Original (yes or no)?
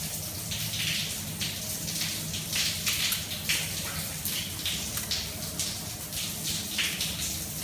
yes